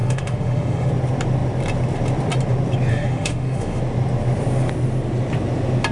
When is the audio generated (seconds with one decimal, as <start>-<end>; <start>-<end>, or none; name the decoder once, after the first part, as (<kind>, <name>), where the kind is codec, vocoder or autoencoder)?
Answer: 0.0-0.9 (autoencoder, DAC-VAE); 2.9-3.8